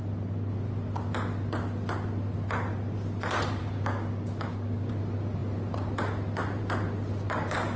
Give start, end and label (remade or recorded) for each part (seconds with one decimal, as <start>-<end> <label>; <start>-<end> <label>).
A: 0.0-3.6 recorded; 3.6-4.9 remade; 4.9-7.8 recorded